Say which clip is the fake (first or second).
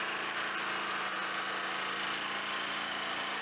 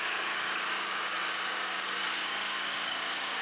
second